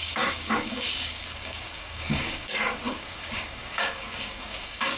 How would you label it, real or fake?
fake